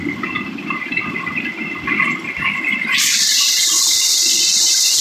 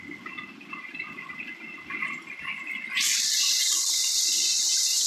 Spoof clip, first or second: first